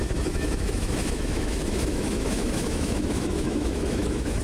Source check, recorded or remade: remade